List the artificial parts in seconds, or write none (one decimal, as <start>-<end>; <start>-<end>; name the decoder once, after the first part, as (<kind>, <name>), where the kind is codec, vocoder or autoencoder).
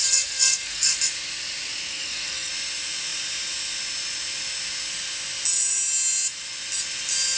0.0-1.0 (codec, SNAC); 1.9-2.5